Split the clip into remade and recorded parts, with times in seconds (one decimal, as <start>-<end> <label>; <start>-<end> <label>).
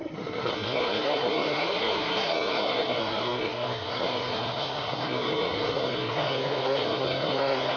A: 0.0-7.8 remade